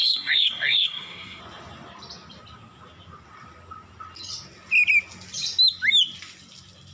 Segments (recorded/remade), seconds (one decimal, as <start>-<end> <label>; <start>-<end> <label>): 0.0-1.4 remade; 1.4-6.9 recorded